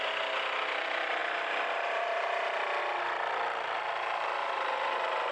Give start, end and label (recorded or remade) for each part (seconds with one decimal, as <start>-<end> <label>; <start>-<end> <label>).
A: 0.0-1.2 recorded; 1.2-2.8 remade; 2.8-4.4 recorded; 4.4-5.3 remade